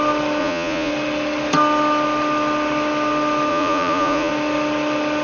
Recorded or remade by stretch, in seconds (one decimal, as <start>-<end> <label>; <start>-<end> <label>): 0.0-0.4 recorded; 0.4-0.9 remade; 0.9-3.5 recorded; 3.5-4.3 remade; 4.3-5.2 recorded